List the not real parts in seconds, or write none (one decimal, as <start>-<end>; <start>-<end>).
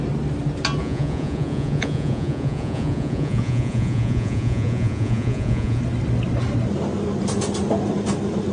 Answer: 0.8-5.8